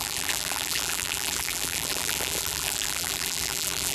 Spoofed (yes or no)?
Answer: yes